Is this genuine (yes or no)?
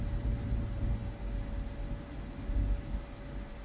yes